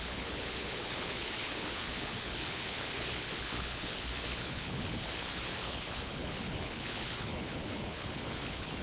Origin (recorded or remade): remade